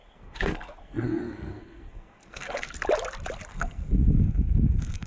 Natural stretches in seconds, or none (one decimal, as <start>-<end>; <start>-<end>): 2.7-3.5